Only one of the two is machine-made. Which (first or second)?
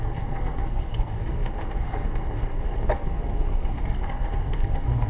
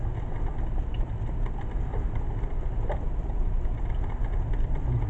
first